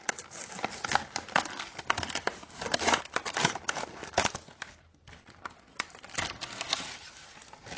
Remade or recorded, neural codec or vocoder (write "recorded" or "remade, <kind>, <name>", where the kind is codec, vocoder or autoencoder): recorded